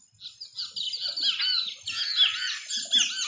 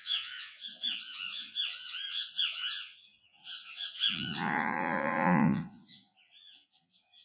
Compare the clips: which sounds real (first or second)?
first